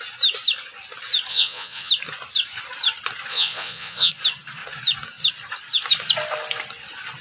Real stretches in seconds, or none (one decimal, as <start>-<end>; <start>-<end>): 0.0-1.3; 1.9-3.3; 4.1-7.2